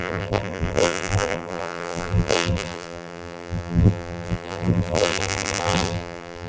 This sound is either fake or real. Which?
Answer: fake